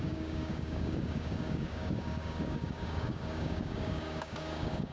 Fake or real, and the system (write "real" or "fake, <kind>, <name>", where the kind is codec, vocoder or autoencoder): fake, codec, DAC